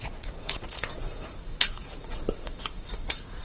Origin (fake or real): fake